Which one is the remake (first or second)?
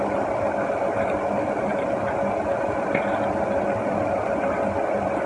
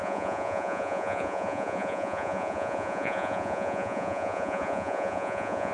second